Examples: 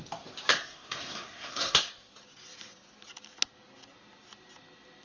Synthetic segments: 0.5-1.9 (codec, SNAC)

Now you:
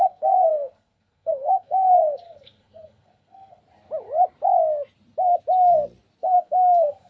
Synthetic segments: 0.0-3.6 (codec, SNAC); 6.2-7.1

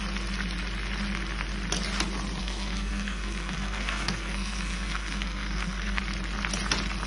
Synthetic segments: 2.4-6.0 (codec, SNAC)

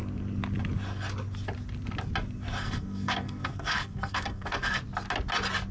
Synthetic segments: 2.6-4.8 (codec, SNAC)

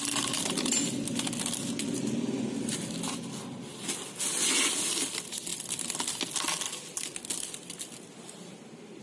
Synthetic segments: none